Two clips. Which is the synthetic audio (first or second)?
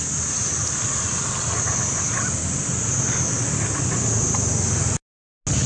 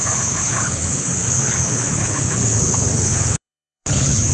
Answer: second